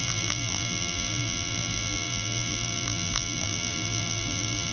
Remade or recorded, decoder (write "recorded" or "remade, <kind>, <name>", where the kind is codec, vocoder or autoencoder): remade, vocoder, BigVGAN v2